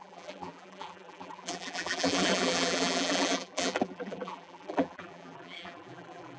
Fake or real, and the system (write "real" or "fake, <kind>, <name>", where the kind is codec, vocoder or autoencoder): fake, vocoder, BigVGAN v2